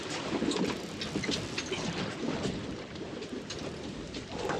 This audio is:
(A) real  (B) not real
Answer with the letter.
A